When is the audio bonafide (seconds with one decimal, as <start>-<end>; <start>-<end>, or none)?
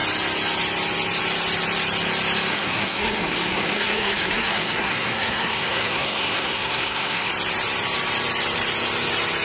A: 0.0-2.5; 7.3-9.4